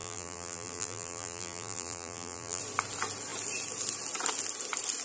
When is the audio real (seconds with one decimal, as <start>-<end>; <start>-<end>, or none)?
2.6-5.0